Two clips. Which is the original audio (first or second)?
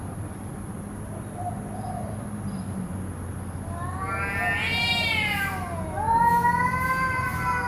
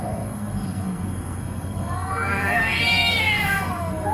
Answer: first